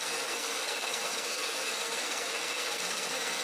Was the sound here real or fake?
fake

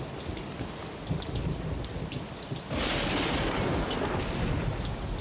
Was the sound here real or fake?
real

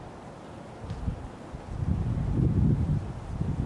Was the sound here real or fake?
real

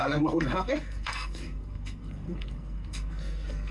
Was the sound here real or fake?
fake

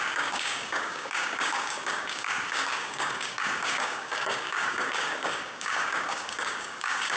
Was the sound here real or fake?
fake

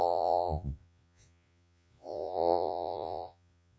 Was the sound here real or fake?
fake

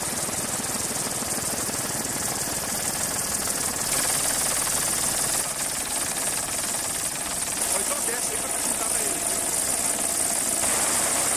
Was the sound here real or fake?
real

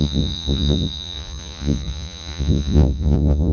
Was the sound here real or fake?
fake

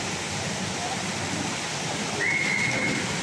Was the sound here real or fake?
real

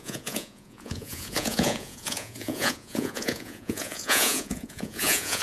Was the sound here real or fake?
fake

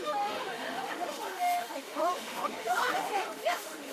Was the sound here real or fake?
fake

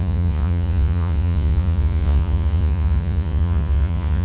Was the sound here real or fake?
fake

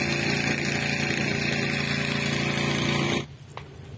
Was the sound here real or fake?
real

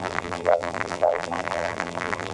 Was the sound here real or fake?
fake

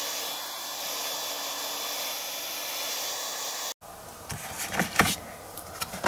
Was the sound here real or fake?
real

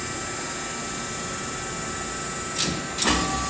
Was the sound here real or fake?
real